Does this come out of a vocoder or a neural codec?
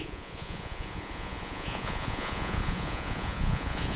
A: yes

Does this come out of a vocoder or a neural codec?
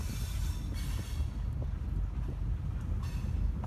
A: no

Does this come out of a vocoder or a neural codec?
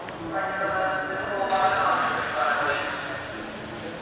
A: no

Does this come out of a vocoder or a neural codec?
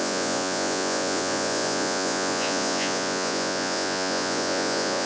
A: yes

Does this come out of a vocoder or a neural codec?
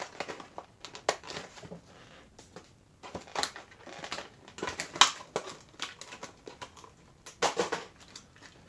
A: no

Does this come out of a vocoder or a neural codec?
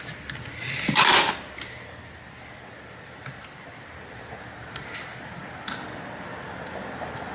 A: no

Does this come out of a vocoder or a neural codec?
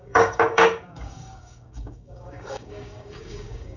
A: yes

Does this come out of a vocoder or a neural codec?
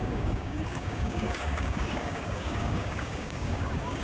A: yes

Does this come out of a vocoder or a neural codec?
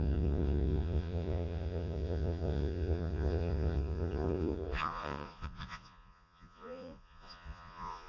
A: yes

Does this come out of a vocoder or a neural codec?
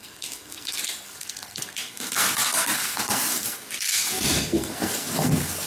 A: yes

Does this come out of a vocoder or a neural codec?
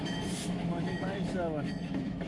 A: yes